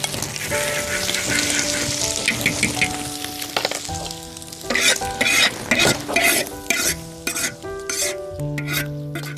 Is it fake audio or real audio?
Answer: real